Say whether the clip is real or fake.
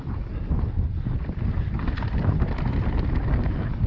real